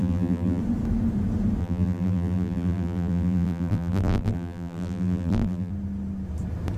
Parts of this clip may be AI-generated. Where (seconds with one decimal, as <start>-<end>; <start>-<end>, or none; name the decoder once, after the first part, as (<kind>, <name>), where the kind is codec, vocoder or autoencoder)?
0.0-0.6 (vocoder, BigVGAN v2); 1.6-5.7